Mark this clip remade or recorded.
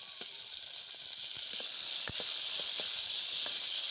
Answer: recorded